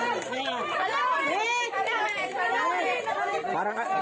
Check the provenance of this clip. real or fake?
real